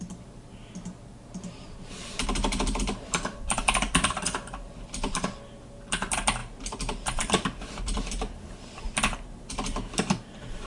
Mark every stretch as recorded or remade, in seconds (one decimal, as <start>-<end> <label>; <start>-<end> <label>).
0.0-10.7 remade